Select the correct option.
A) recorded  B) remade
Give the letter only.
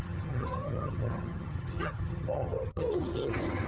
B